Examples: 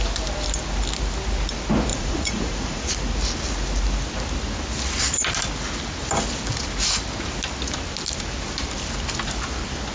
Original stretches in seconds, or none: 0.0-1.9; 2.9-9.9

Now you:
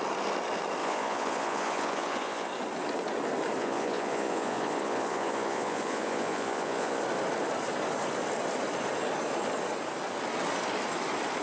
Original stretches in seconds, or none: 0.0-0.8; 2.5-3.6; 7.0-11.4